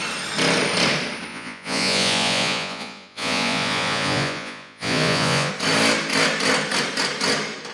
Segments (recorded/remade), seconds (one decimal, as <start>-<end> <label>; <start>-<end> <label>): 0.0-1.3 recorded; 1.3-5.5 remade; 5.5-7.7 recorded